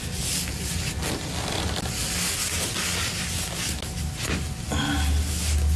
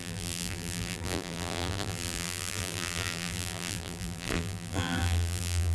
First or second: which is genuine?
first